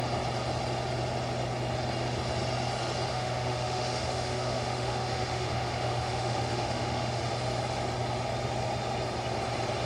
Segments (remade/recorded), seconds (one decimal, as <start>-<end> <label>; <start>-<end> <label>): 0.0-3.1 recorded; 3.1-7.2 remade; 7.2-9.9 recorded